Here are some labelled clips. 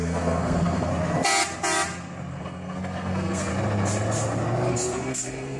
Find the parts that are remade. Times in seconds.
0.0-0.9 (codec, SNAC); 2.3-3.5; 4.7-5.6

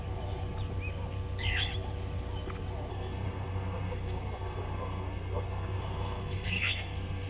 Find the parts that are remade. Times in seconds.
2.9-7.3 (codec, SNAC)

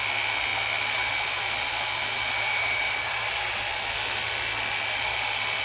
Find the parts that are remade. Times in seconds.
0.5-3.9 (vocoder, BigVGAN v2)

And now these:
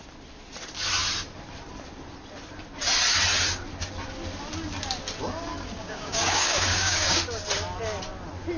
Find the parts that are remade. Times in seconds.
5.8-7.2 (codec, DAC)

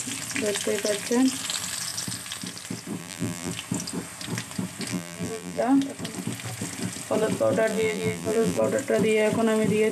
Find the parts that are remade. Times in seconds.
3.0-3.5 (vocoder, BigVGAN v2); 4.9-5.6; 7.7-8.6

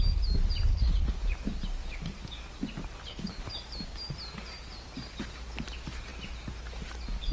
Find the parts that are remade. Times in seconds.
0.7-1.2 (codec, HILCodec); 3.0-3.5